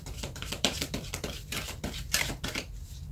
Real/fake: fake